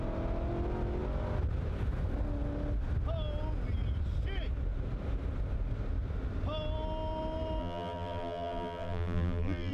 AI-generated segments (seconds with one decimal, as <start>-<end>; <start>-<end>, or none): 7.6-9.7